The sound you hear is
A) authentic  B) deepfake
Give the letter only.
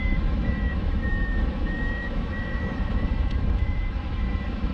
B